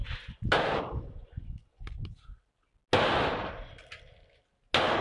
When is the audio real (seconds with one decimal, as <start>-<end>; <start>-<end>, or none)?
0.0-5.0